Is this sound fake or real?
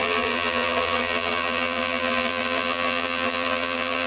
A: fake